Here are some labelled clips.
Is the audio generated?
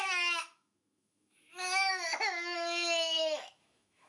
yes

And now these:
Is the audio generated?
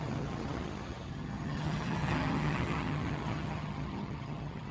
yes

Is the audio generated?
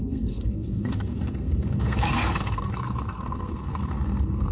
yes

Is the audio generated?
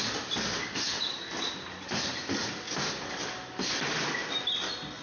no